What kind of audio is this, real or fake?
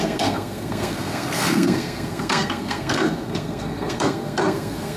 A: fake